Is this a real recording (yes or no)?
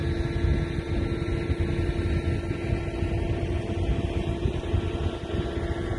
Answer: yes